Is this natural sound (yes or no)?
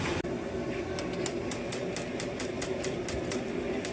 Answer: yes